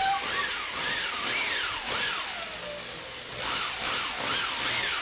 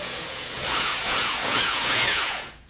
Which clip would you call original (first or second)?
first